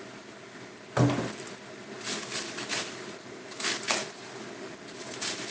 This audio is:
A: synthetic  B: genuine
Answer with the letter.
B